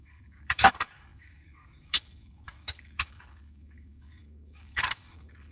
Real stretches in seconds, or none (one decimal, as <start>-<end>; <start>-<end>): none